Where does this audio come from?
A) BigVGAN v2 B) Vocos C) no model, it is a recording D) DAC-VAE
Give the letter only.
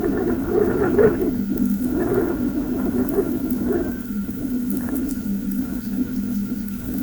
D